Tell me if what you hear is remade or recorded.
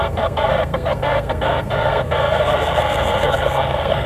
remade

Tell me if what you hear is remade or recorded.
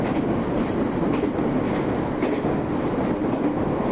recorded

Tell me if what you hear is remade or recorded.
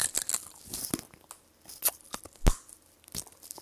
recorded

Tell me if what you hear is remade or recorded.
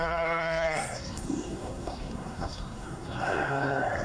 remade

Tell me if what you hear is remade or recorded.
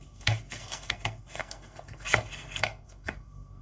remade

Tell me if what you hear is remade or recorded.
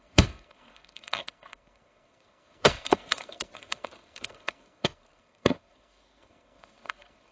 remade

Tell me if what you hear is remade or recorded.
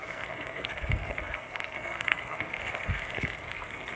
remade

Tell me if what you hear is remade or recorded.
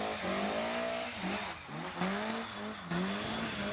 recorded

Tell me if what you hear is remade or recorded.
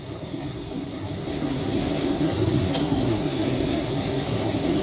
remade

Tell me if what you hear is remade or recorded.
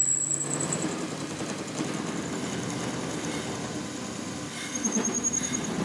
recorded